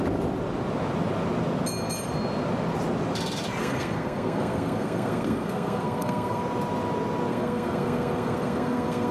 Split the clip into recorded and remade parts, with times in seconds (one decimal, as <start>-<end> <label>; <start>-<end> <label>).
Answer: 0.0-3.6 recorded; 3.6-6.4 remade; 6.4-7.3 recorded; 7.3-9.1 remade